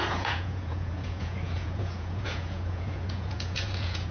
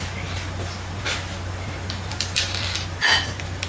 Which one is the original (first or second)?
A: second